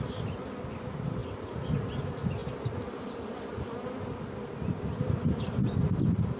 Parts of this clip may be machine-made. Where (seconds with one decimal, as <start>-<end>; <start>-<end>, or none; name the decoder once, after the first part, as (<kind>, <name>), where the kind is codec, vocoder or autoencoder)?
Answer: none